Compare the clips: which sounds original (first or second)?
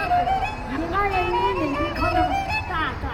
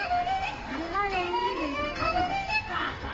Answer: first